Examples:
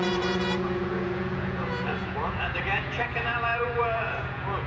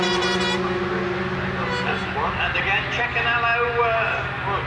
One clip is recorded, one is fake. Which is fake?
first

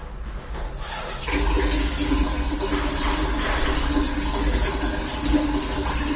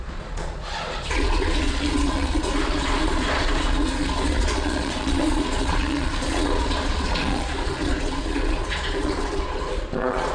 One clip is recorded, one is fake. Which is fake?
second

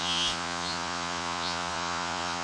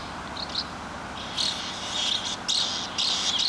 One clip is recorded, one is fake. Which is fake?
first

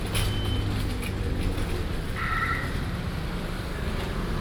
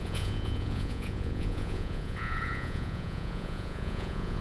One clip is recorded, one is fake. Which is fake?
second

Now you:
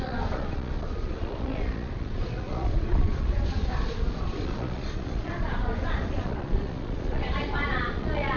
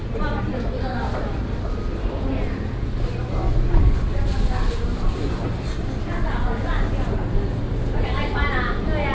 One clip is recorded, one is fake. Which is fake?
first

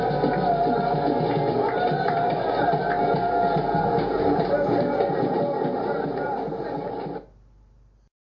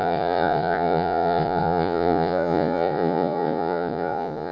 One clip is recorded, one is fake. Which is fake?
second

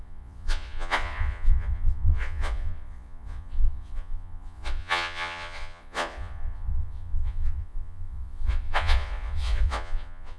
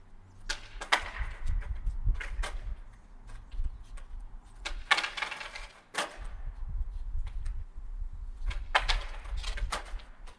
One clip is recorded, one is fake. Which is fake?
first